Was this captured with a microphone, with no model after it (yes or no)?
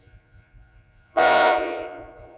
no